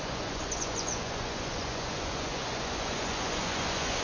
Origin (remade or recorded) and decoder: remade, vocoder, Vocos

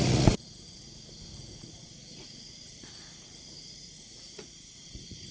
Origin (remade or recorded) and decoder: remade, vocoder, Vocos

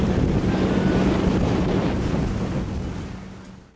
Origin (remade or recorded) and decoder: recorded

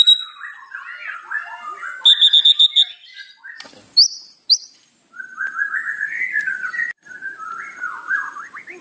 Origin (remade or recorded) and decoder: recorded